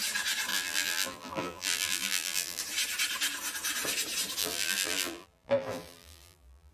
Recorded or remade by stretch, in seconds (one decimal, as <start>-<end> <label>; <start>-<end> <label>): 0.0-0.5 recorded; 0.5-2.6 remade; 2.6-4.4 recorded; 4.4-6.7 remade